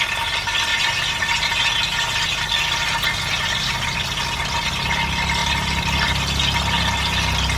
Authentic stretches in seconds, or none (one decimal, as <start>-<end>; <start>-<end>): 0.0-7.6